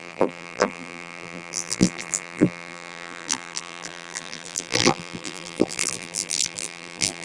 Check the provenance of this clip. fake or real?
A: fake